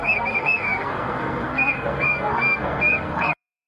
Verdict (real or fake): fake